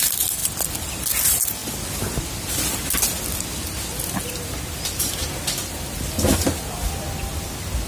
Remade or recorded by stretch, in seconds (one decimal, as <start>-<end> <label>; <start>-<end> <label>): 0.0-7.9 recorded